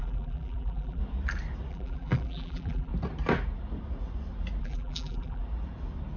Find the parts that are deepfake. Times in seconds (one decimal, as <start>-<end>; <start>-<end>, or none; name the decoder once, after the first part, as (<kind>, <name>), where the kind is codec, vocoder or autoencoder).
0.0-1.0 (vocoder, BigVGAN v2); 1.7-2.9; 4.6-5.4